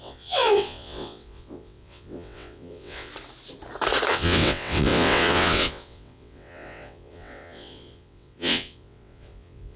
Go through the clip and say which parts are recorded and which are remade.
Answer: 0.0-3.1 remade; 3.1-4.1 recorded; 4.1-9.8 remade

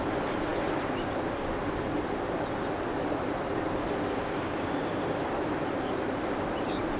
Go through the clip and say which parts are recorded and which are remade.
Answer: 0.0-7.0 recorded